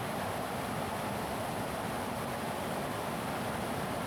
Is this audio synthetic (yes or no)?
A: no